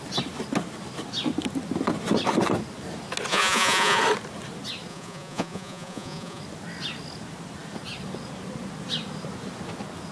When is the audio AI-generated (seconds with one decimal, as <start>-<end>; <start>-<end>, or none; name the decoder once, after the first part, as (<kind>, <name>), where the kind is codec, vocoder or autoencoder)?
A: 3.3-4.0 (vocoder, Vocos); 4.9-6.4